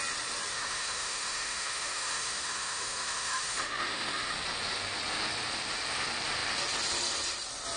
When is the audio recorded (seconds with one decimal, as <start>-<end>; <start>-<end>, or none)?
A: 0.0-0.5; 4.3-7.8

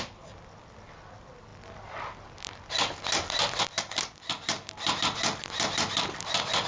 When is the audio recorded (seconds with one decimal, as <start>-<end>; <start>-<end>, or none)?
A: 0.0-6.7

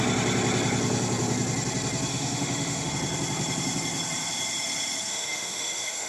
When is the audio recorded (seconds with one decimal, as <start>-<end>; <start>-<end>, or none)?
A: 0.0-2.1; 2.9-5.1

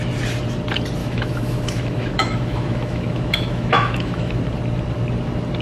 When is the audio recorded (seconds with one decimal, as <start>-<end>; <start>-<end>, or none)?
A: 0.0-1.0; 4.4-5.6